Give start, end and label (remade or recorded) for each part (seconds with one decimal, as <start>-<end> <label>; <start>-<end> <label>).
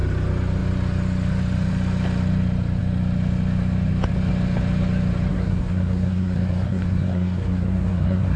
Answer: 0.0-5.3 recorded; 5.3-8.4 remade